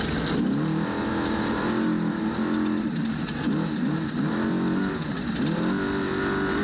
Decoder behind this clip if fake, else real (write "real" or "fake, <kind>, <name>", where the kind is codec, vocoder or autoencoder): real